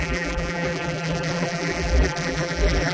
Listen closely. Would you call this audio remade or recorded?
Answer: remade